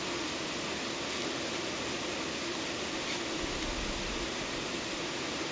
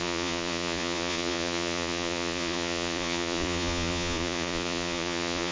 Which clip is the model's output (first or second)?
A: second